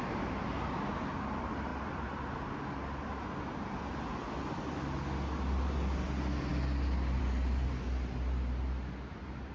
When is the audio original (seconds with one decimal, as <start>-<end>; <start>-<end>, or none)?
0.0-9.5